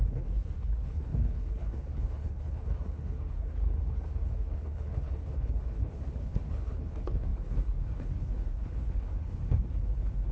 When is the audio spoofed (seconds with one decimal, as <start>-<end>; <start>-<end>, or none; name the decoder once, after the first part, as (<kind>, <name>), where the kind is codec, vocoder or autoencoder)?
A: 0.0-10.3 (codec, HILCodec)